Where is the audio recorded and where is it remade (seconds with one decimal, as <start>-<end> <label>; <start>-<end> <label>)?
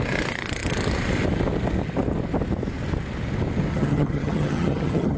0.0-3.7 recorded; 3.7-5.2 remade